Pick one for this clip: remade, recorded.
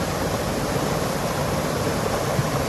recorded